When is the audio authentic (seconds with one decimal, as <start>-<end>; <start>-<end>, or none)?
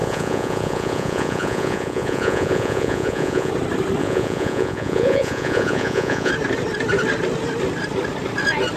3.5-4.0; 6.3-8.8